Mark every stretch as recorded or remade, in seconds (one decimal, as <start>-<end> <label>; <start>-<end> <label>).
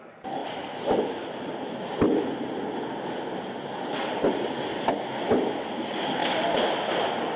0.0-7.4 recorded